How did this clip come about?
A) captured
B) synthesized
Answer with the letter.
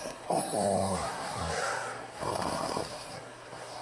B